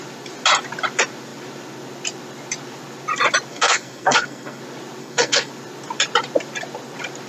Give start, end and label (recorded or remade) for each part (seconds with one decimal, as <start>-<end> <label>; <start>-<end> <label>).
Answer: 0.0-3.5 recorded; 3.5-4.6 remade; 4.6-5.0 recorded; 5.0-5.5 remade; 5.5-7.3 recorded